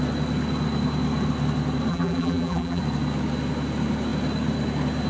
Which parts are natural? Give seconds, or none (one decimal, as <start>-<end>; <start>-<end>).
0.0-1.9; 2.8-5.1